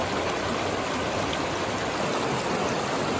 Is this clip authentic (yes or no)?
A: yes